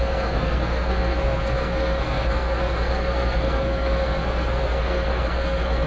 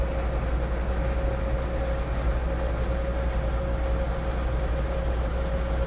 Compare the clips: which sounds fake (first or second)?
first